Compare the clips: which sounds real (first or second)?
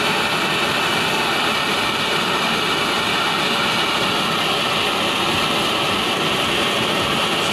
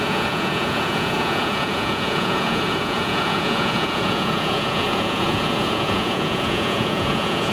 first